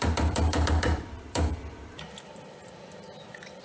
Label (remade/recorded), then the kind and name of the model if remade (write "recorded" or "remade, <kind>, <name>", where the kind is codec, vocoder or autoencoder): remade, vocoder, BigVGAN v2